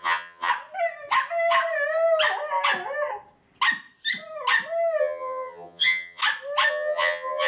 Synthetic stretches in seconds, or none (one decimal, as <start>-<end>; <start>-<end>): 0.0-0.5; 5.0-6.2; 6.7-7.5